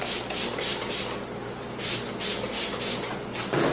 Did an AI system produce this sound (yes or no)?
no